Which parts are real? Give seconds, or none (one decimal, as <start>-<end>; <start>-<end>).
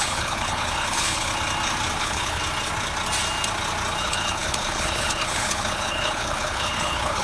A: 1.3-2.0; 2.4-4.0